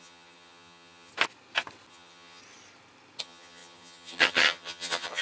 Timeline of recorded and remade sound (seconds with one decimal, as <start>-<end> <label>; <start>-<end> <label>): 0.0-1.1 remade; 1.1-1.9 recorded; 1.9-2.4 remade; 2.4-3.2 recorded; 3.2-5.2 remade

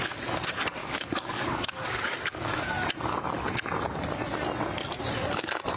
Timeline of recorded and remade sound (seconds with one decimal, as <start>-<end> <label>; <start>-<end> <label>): 0.0-0.8 recorded; 0.8-2.7 remade; 2.7-5.8 recorded